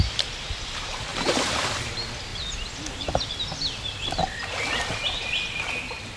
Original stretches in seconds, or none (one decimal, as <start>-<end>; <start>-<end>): 0.0-1.1; 1.7-6.2